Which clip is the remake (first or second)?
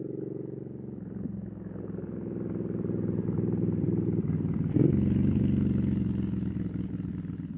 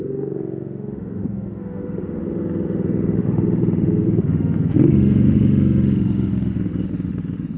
second